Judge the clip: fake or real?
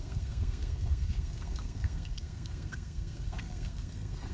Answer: fake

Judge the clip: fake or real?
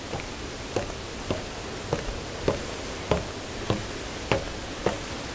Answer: real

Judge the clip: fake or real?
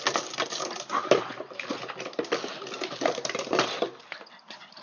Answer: fake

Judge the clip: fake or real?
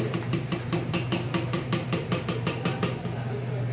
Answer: fake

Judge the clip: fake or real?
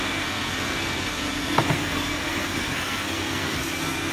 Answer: fake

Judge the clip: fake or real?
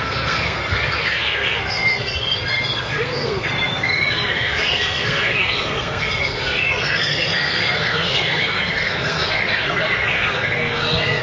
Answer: fake